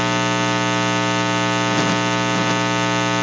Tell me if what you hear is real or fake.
real